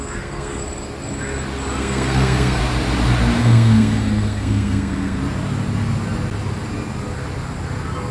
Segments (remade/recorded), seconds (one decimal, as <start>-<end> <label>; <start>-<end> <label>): 0.0-0.6 remade; 0.6-1.8 recorded; 1.8-2.6 remade; 2.6-3.4 recorded; 3.4-5.2 remade; 5.2-8.1 recorded